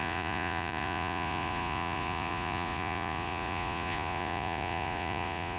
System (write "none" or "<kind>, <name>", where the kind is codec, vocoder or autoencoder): vocoder, Vocos